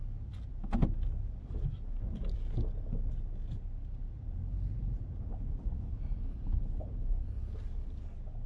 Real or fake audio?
real